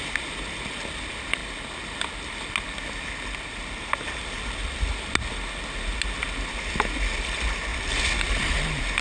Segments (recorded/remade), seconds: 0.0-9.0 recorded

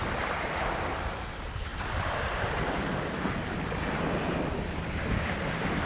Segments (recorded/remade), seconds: 0.0-5.9 recorded

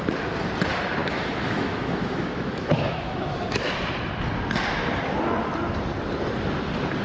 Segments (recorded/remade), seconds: 0.0-1.0 recorded; 1.0-3.7 remade; 3.7-7.0 recorded

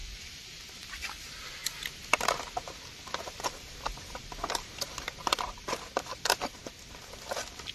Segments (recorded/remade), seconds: 0.0-0.6 remade; 0.6-3.9 recorded; 3.9-6.6 remade; 6.6-7.7 recorded

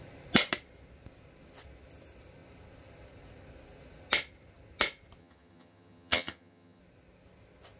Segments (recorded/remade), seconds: 0.0-5.2 recorded; 5.2-6.8 remade; 6.8-7.8 recorded

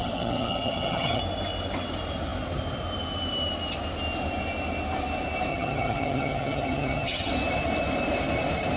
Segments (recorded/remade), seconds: 0.0-1.2 remade; 1.2-5.5 recorded; 5.5-7.3 remade; 7.3-8.8 recorded